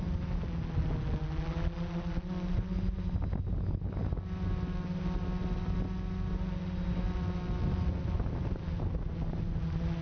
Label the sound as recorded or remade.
recorded